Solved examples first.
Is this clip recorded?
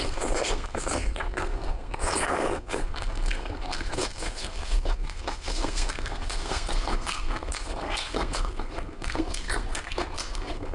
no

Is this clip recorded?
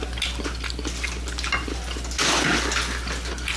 yes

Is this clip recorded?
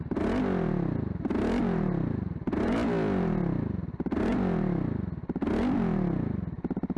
yes